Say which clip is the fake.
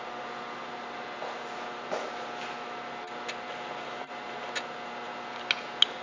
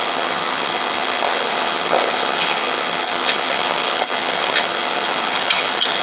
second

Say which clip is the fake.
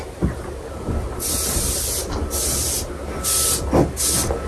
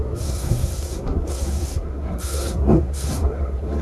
second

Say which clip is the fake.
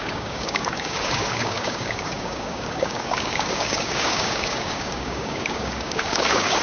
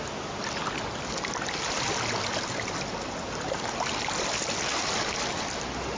first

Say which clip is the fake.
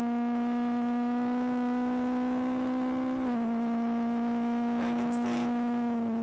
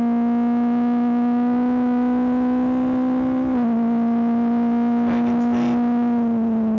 first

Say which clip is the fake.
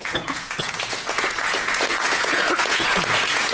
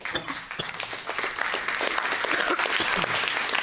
first